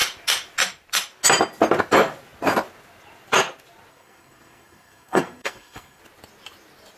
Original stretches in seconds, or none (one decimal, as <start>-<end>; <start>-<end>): 0.0-3.9; 6.0-7.0